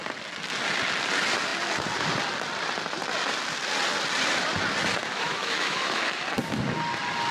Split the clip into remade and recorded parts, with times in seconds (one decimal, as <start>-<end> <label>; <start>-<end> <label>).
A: 0.0-5.1 recorded; 5.1-6.2 remade; 6.2-7.3 recorded